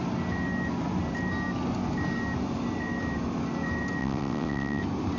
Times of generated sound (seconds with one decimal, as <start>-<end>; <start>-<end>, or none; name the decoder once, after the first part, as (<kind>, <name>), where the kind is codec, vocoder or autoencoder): 4.0-4.8 (vocoder, WaveNeXt)